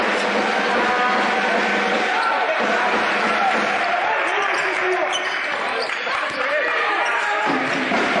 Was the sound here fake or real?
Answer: real